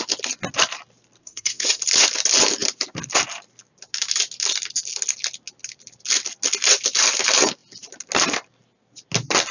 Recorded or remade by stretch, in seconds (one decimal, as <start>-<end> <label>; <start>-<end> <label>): 0.0-1.2 recorded; 1.2-1.8 remade; 1.8-9.5 recorded